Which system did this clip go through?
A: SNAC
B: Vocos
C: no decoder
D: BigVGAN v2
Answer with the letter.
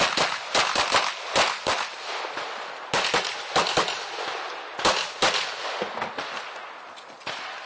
C